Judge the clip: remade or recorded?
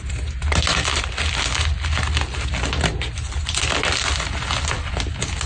recorded